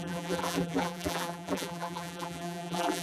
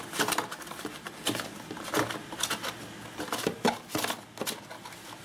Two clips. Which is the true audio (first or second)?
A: second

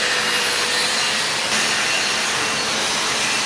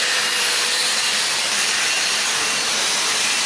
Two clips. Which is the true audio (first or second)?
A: first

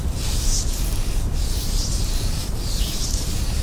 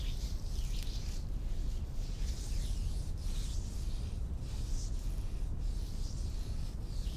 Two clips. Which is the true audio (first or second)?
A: second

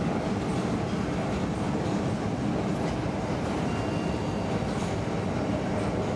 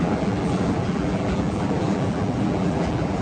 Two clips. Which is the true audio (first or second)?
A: first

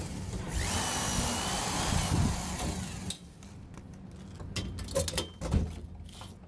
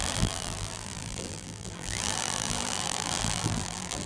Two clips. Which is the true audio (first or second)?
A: first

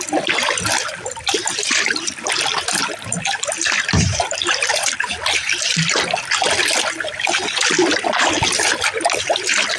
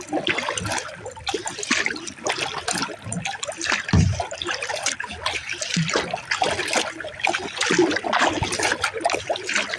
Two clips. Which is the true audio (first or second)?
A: second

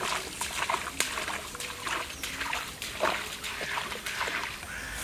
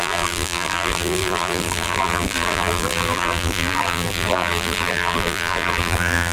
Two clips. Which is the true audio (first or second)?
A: first